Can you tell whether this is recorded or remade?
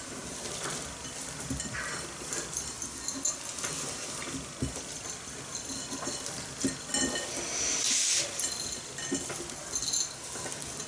recorded